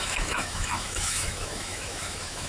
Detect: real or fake fake